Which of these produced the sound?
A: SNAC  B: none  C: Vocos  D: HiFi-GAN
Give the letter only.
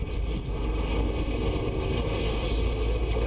B